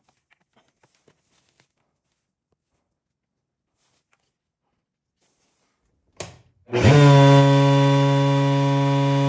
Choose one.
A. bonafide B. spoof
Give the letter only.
A